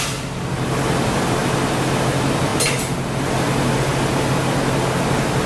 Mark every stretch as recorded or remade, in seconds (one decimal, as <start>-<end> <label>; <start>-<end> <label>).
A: 0.0-5.5 recorded